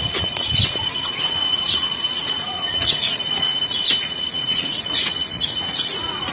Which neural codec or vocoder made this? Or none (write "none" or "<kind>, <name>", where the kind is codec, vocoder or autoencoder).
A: vocoder, Vocos